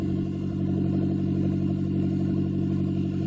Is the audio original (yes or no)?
yes